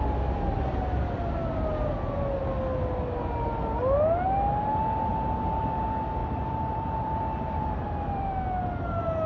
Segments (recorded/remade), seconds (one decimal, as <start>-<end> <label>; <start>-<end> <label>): 0.0-5.1 recorded; 5.1-5.6 remade; 5.6-6.2 recorded; 6.2-8.3 remade; 8.3-9.3 recorded